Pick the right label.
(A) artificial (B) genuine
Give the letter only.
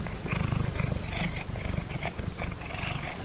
B